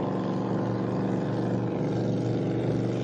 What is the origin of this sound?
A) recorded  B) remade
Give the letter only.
A